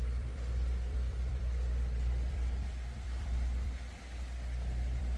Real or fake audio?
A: fake